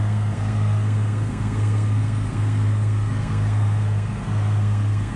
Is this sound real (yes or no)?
no